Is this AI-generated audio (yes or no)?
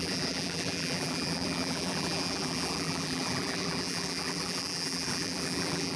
yes